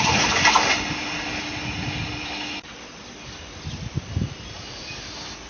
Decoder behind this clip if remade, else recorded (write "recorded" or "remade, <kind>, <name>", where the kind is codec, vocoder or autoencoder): recorded